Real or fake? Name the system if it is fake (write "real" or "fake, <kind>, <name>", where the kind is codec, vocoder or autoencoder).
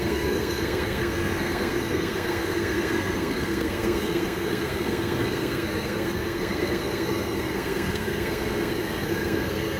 fake, codec, SNAC